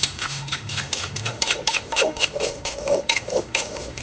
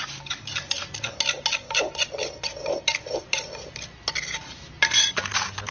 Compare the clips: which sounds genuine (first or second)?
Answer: second